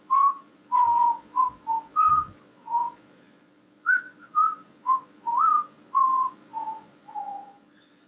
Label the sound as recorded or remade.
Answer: remade